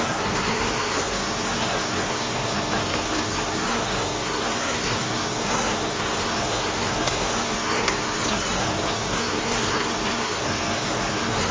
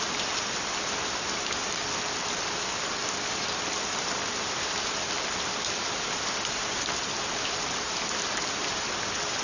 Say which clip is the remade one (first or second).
first